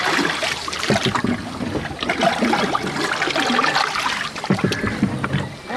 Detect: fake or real fake